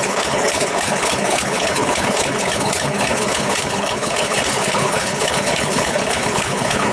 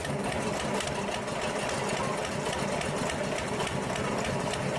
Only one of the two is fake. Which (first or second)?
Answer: first